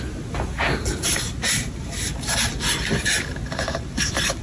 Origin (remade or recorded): recorded